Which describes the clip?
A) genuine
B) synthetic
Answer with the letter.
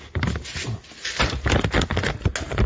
A